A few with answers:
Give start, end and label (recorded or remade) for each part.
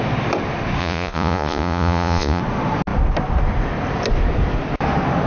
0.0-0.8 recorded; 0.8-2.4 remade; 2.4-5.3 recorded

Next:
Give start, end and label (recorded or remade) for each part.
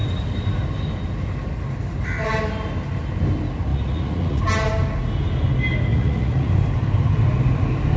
0.0-3.7 recorded; 3.7-4.4 remade; 4.4-5.9 recorded; 5.9-6.5 remade; 6.5-8.0 recorded